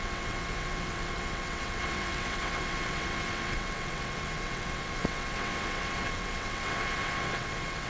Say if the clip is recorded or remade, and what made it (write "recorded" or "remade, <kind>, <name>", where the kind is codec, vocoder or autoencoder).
remade, vocoder, WaveNeXt